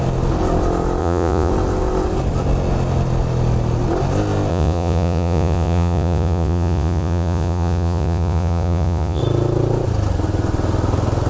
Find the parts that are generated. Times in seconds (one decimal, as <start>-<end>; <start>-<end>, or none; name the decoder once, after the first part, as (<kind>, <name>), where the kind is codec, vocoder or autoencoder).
1.0-1.5 (vocoder, Vocos); 4.5-9.2